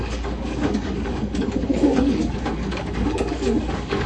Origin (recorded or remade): remade